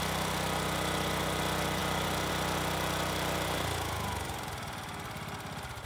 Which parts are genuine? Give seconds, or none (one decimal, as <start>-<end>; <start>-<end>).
0.0-5.9